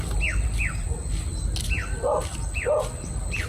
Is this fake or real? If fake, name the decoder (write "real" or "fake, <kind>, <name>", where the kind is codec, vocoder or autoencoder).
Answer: real